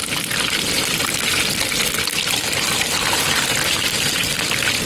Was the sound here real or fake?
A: real